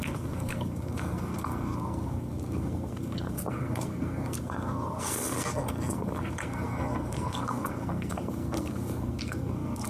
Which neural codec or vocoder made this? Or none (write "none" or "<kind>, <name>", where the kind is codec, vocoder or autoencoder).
codec, SNAC